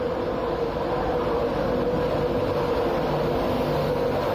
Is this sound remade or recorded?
recorded